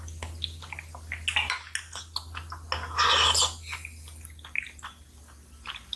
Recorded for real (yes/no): yes